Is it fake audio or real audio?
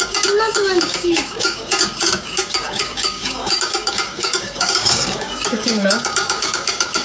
fake